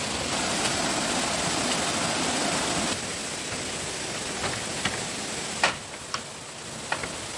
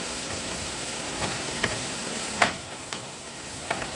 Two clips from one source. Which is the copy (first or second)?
second